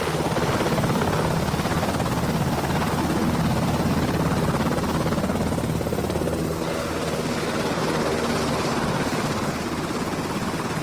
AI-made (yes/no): no